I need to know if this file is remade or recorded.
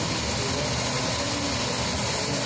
recorded